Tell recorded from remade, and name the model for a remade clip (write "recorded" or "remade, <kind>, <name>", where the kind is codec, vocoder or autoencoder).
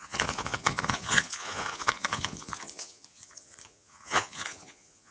remade, vocoder, Vocos